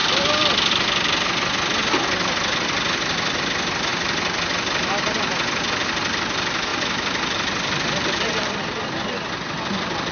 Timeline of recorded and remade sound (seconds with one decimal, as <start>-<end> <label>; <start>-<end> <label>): 0.0-0.7 remade; 0.7-3.9 recorded; 3.9-4.9 remade; 4.9-6.7 recorded; 6.7-8.6 remade; 8.6-10.1 recorded